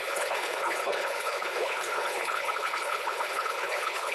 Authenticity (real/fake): fake